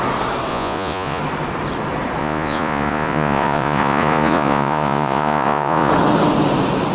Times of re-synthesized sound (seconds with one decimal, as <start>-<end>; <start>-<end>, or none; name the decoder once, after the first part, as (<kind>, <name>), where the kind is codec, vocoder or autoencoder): 0.5-1.2 (vocoder, Vocos); 2.2-5.9

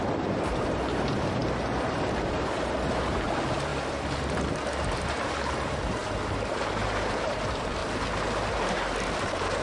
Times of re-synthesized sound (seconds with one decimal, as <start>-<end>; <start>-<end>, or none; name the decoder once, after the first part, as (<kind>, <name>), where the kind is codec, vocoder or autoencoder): 0.0-3.7 (vocoder, BigVGAN v2); 5.4-6.0; 6.5-7.8; 8.7-9.6

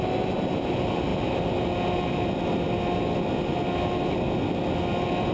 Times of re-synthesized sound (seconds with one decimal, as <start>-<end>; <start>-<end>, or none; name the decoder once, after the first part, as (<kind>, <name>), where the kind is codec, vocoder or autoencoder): none

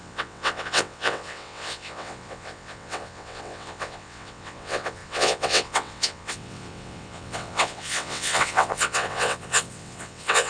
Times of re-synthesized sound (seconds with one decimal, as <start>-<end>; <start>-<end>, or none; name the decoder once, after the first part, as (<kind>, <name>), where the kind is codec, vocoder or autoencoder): 0.0-10.5 (vocoder, WaveNeXt)

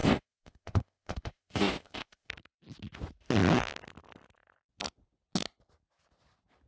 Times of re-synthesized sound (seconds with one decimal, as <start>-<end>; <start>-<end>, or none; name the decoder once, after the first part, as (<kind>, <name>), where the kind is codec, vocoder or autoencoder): 0.0-2.3 (codec, ZipCodec)

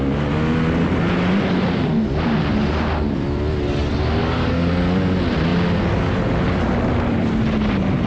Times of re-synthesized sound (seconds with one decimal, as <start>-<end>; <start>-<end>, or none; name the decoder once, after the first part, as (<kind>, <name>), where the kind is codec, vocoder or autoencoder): 4.2-4.7 (codec, DAC)